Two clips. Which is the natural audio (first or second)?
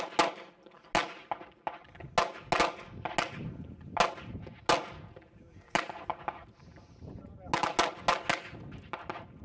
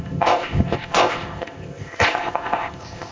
first